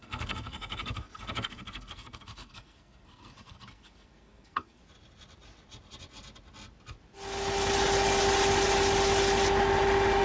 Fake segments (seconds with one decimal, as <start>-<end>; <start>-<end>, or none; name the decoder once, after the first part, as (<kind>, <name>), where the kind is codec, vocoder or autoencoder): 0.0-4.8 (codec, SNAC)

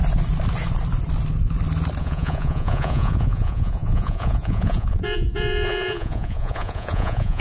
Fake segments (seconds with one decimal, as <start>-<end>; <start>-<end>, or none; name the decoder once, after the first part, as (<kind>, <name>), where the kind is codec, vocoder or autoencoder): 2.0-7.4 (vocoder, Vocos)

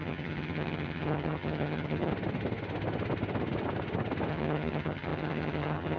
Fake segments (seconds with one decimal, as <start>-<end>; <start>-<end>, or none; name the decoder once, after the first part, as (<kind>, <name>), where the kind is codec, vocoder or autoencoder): 0.0-2.1 (vocoder, HiFi-GAN); 4.3-6.0

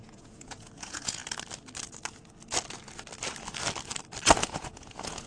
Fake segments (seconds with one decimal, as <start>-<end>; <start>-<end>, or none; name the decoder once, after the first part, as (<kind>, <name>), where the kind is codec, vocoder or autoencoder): 0.0-1.2 (vocoder, Vocos); 4.4-5.3